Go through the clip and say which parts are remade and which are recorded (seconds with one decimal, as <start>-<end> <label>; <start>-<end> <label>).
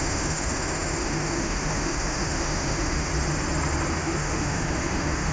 0.0-3.1 remade; 3.1-3.9 recorded; 3.9-5.3 remade